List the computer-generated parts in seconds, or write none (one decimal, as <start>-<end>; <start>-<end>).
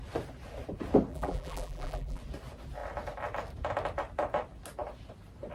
1.1-2.2